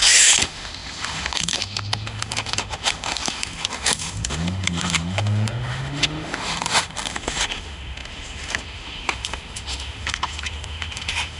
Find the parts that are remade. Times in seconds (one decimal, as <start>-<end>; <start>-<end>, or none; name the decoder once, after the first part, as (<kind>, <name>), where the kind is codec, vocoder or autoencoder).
0.0-11.4 (autoencoder, DAC-VAE)